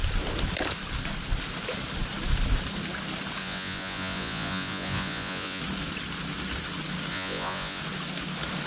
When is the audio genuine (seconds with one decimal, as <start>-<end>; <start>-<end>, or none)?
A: 0.0-3.4; 5.6-7.1; 7.8-8.7